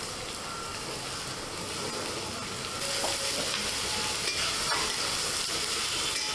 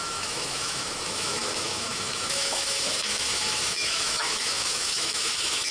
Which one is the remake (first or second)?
second